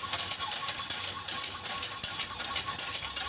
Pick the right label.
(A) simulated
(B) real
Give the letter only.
B